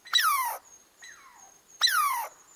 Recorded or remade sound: recorded